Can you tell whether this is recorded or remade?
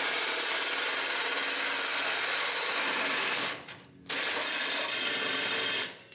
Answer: recorded